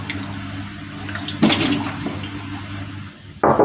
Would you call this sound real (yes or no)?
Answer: yes